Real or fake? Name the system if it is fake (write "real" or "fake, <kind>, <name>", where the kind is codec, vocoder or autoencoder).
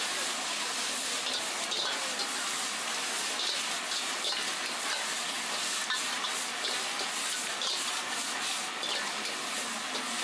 real